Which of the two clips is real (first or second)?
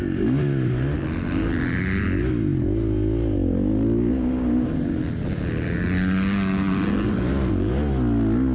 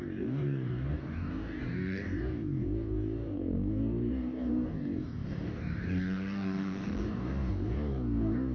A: first